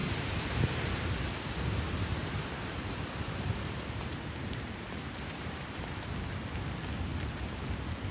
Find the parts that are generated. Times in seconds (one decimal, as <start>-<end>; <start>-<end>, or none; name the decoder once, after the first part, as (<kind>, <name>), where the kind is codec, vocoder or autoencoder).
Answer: 0.0-1.1 (vocoder, BigVGAN v2); 2.2-6.1